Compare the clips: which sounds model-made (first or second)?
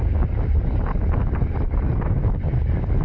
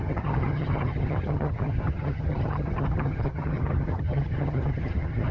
second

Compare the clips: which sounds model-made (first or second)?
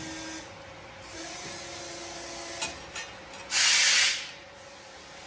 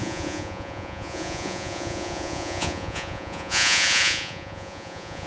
second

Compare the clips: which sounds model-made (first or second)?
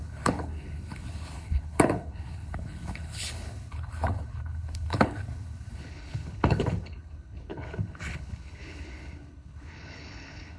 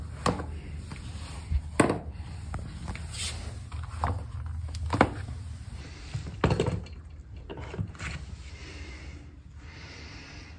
first